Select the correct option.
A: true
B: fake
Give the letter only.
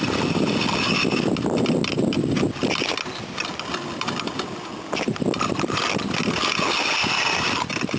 A